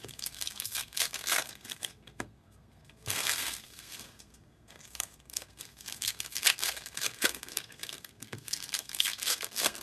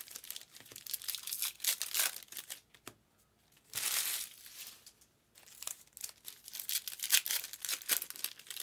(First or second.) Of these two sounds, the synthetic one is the first